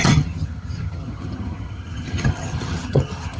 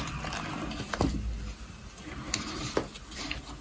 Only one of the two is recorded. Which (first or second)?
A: second